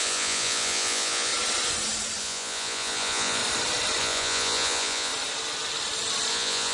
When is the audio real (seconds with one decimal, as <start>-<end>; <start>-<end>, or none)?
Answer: 1.3-2.2; 3.4-4.0; 5.1-6.3